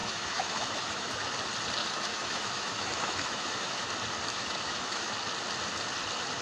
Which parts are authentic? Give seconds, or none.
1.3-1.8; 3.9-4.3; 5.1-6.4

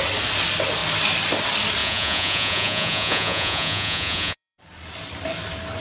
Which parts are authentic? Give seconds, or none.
0.0-1.8; 4.6-5.8

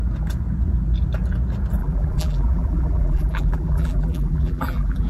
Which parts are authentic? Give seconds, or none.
0.0-1.8

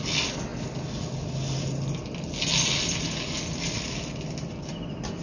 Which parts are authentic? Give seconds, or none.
0.0-5.2

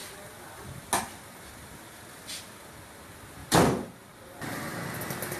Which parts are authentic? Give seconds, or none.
0.0-3.4; 4.6-5.4